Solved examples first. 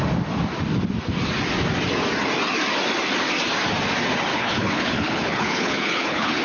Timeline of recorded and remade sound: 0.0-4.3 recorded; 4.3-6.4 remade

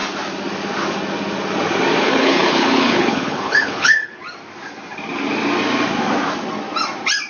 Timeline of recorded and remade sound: 0.0-2.0 recorded; 2.0-4.2 remade; 4.2-7.3 recorded